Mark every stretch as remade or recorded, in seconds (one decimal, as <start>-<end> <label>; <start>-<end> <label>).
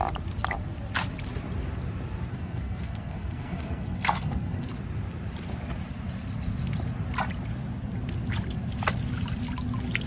0.0-2.3 recorded; 2.3-4.7 remade; 4.7-10.1 recorded